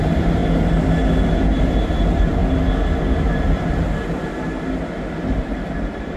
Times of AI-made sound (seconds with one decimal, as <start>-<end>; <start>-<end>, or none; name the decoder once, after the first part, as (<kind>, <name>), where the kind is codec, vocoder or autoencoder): 0.0-0.4 (vocoder, BigVGAN v2); 1.6-2.4; 3.2-4.3; 5.3-6.2